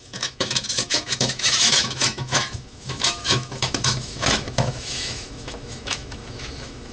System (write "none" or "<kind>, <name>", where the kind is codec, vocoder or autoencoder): autoencoder, DAC-VAE